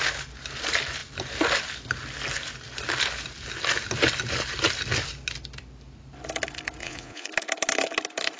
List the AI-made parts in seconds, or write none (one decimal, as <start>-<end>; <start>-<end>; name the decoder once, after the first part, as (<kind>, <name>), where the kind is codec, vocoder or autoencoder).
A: 6.8-7.3 (vocoder, Vocos)